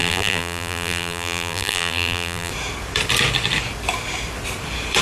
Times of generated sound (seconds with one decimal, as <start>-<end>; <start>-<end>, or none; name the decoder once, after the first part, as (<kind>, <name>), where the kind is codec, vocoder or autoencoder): 0.0-2.5 (vocoder, BigVGAN v2)